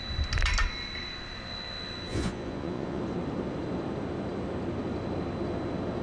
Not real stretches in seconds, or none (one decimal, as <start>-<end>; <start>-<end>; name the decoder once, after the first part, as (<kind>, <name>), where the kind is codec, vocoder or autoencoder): 2.1-3.0 (vocoder, Vocos)